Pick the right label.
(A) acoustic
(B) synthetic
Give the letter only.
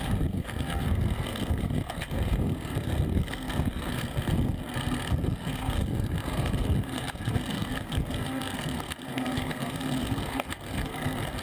B